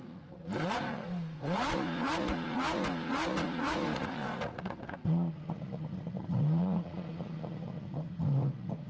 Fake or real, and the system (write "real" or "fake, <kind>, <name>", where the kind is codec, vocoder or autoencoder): fake, vocoder, Vocos